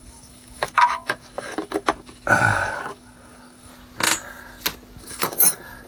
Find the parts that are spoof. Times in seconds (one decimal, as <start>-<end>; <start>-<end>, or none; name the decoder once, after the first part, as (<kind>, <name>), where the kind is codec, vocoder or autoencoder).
0.0-3.7 (codec, DAC); 5.0-5.9